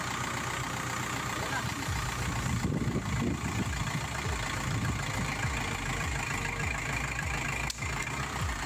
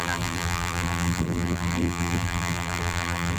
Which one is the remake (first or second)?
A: second